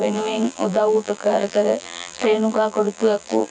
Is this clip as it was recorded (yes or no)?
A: no